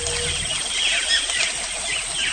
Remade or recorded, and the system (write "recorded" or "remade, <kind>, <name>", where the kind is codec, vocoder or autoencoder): recorded